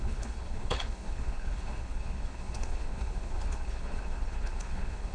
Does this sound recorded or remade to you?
remade